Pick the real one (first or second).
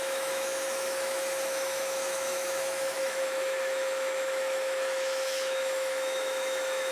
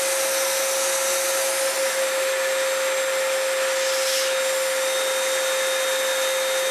second